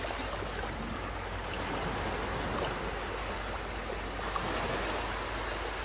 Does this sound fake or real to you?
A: real